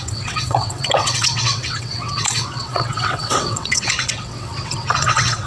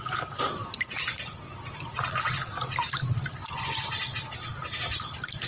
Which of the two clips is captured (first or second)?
second